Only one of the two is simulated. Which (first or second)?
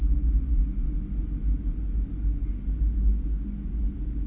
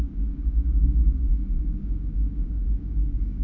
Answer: second